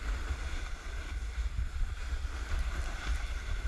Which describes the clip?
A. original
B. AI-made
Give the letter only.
A